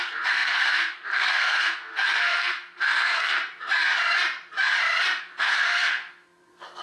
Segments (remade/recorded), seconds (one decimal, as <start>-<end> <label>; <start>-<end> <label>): 0.0-3.4 remade; 3.4-5.2 recorded; 5.2-6.8 remade